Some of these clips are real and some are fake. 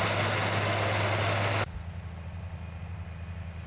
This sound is real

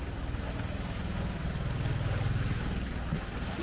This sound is real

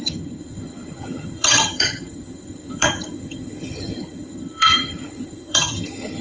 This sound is fake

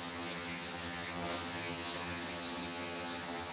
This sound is fake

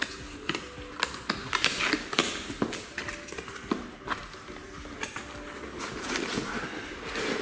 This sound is real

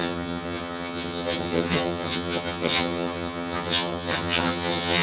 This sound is fake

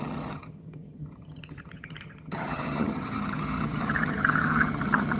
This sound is fake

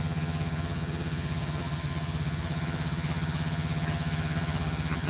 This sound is fake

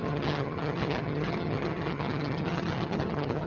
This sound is fake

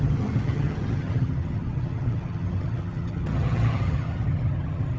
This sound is fake